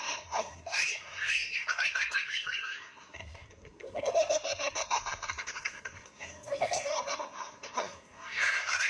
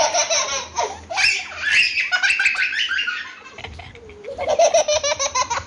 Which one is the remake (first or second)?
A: first